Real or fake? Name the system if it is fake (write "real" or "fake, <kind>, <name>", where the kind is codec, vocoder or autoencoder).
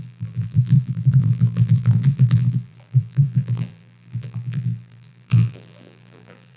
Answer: fake, vocoder, BigVGAN v2